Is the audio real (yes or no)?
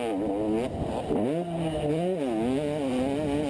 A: yes